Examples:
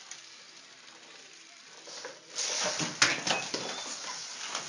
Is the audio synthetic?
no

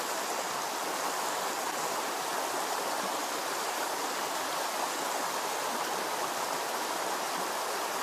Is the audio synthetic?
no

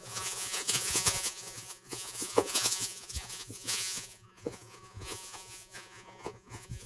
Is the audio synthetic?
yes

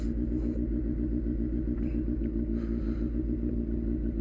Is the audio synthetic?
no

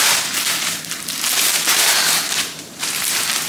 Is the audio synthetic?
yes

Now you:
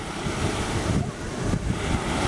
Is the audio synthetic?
no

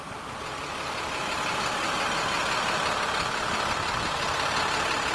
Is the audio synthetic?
no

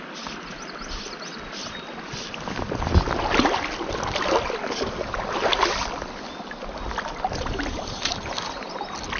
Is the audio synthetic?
no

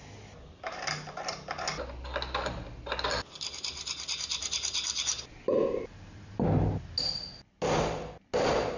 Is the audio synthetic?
no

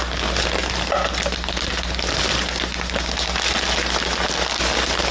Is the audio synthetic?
no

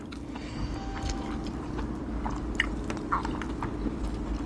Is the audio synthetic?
no